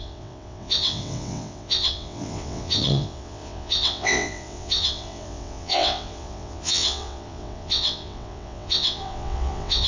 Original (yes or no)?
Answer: no